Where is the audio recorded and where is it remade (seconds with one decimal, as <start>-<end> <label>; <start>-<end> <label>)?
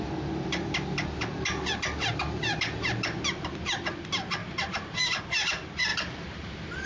0.0-4.4 recorded; 4.4-5.2 remade; 5.2-5.9 recorded; 5.9-6.9 remade